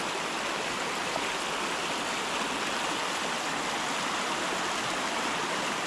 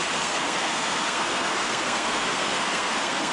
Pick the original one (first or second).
first